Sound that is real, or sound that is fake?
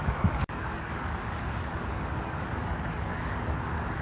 fake